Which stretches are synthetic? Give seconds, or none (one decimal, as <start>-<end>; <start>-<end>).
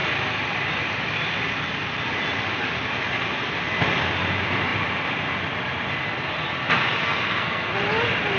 7.0-7.7